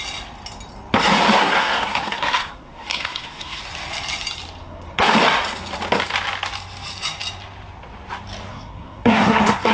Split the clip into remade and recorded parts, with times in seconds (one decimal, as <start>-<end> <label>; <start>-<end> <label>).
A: 0.0-1.4 recorded; 1.4-3.6 remade; 3.6-4.6 recorded; 4.6-5.1 remade; 5.1-8.5 recorded; 8.5-9.7 remade